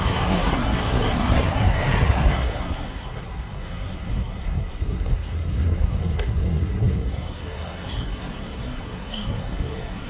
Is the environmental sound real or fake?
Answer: fake